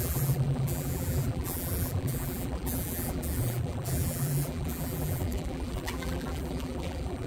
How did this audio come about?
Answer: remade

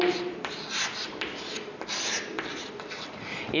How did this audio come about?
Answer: remade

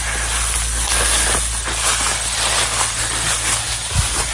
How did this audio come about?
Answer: recorded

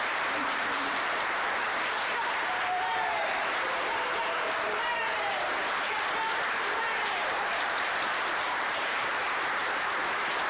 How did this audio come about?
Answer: remade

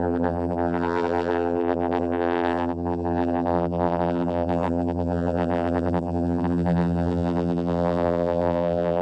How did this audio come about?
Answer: remade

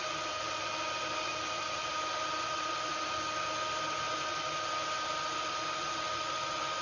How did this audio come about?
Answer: recorded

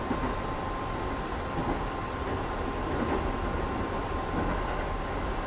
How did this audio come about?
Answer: recorded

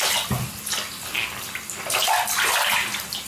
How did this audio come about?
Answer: recorded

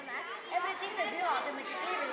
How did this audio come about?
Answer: recorded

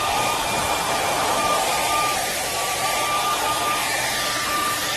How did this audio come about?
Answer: remade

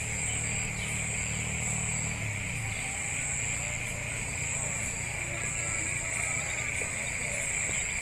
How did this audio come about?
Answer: recorded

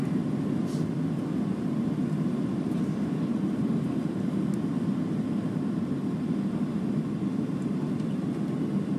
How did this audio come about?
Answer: recorded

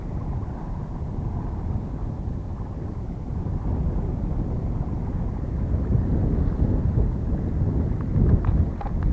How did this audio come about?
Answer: recorded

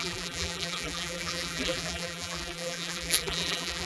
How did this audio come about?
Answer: remade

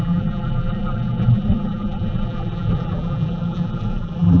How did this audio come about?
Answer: remade